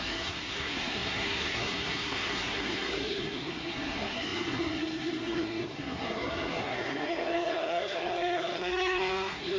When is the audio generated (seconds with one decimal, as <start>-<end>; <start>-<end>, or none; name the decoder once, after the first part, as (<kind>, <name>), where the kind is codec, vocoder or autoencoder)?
0.0-9.6 (codec, SNAC)